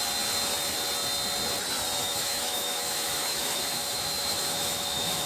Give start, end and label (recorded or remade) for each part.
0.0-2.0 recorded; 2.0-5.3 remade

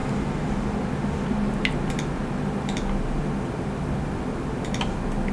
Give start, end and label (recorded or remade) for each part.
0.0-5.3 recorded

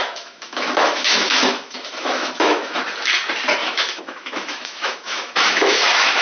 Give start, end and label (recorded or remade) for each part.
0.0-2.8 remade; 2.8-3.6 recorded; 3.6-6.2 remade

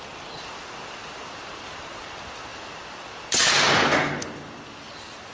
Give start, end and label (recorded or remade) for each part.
0.0-5.3 recorded

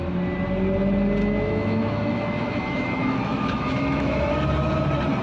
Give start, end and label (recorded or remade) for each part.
0.0-1.2 recorded; 1.2-4.3 remade; 4.3-5.2 recorded

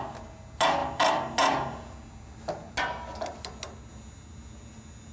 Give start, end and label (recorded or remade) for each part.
0.0-5.1 recorded

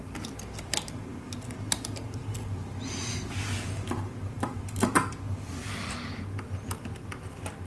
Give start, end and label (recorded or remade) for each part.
0.0-7.7 recorded